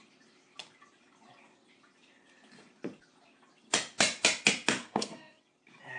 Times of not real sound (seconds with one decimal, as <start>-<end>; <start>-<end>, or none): 4.8-5.4